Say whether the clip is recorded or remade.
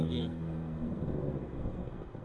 remade